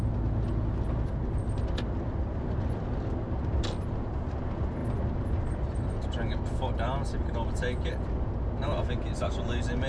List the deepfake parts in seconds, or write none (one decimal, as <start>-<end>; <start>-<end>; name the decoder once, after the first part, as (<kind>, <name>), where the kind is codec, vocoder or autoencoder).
none